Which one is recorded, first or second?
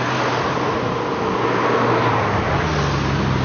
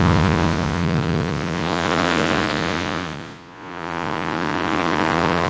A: first